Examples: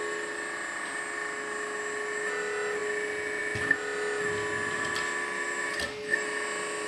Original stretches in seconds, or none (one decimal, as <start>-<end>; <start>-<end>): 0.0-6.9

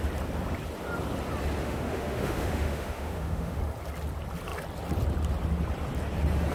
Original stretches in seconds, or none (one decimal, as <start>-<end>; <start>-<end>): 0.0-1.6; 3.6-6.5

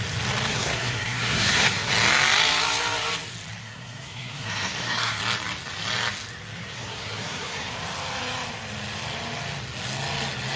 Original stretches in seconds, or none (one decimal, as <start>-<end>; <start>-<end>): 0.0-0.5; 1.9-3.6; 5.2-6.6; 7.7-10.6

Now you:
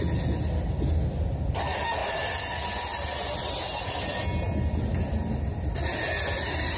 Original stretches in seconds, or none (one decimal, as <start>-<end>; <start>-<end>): 0.0-6.8

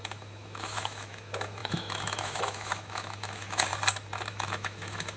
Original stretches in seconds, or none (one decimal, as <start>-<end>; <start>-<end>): 3.7-4.3

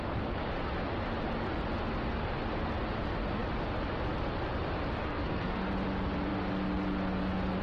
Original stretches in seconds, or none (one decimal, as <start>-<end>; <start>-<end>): 0.0-5.0; 5.6-7.6

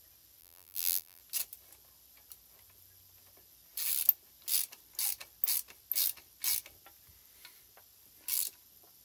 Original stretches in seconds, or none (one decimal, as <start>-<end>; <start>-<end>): 0.0-0.4; 1.2-9.0

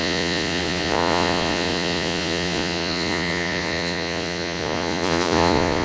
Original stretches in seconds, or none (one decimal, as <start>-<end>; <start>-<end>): none